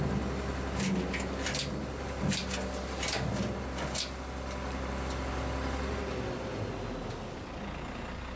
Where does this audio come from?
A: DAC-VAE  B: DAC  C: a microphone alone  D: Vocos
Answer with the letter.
C